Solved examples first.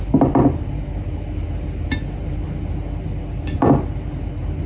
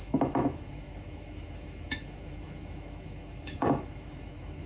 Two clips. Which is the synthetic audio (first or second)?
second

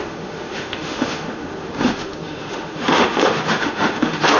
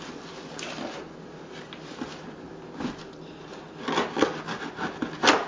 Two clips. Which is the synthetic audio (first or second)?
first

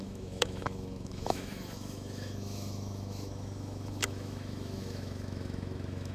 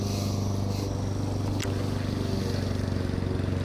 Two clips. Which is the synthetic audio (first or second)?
first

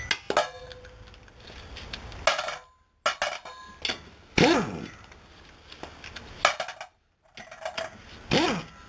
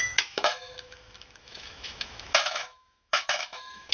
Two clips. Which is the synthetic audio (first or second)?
second